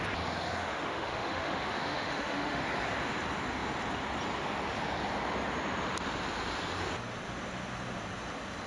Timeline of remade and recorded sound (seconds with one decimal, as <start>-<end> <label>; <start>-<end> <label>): 0.0-0.7 recorded; 0.7-2.6 remade; 2.6-8.7 recorded